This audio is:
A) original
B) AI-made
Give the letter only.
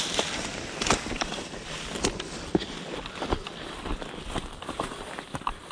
A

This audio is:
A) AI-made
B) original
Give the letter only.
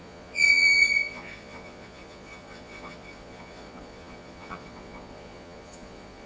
A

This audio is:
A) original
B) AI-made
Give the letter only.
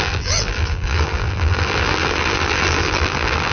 B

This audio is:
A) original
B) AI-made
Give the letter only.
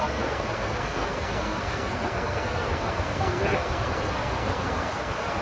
B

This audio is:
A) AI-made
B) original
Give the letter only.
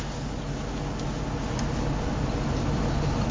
B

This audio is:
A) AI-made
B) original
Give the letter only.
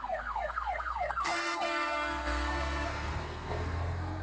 A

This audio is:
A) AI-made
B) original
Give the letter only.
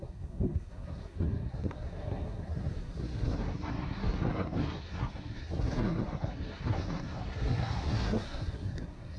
A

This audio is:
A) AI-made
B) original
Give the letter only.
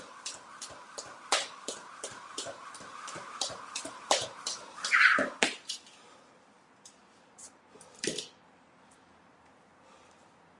A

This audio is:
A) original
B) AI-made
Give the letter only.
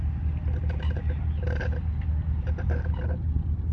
A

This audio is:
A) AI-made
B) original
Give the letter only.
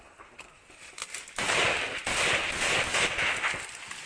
B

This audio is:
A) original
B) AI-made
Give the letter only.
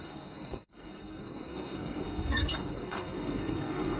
B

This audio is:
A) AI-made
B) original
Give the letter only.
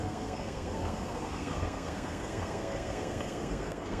A